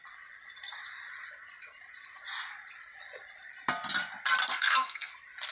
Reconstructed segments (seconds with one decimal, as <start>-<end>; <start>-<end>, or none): 4.5-5.1